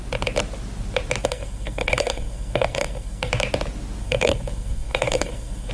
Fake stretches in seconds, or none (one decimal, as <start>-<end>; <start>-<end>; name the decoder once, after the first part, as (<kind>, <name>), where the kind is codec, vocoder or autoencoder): 1.2-3.3 (codec, SNAC); 4.0-5.7